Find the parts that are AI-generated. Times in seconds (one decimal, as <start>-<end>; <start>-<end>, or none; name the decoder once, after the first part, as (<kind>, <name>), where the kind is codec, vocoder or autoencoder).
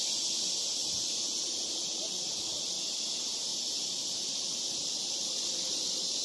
0.8-2.4 (vocoder, BigVGAN v2); 3.5-4.4